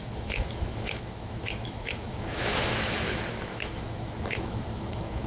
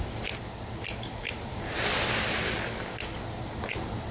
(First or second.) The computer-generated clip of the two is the first